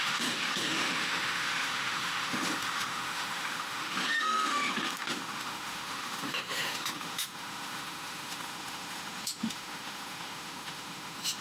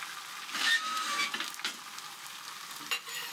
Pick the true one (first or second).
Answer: second